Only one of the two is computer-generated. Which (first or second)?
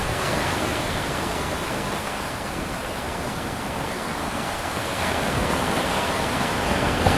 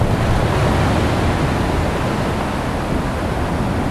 first